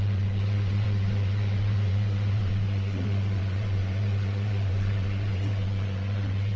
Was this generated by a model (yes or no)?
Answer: yes